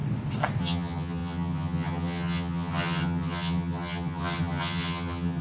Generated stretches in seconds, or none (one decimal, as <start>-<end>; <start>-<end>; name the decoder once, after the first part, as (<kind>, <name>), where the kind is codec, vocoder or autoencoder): 0.6-5.4 (vocoder, HiFi-GAN)